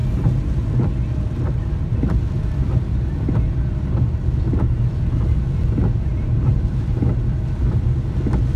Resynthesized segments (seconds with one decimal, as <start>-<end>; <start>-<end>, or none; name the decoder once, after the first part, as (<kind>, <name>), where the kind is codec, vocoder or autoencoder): 6.1-7.0 (vocoder, BigVGAN v2)